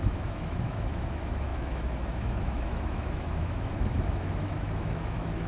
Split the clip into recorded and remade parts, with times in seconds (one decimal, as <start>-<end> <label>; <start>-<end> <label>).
0.0-5.5 remade